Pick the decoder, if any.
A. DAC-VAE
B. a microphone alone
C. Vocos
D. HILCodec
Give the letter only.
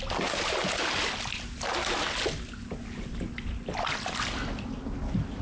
B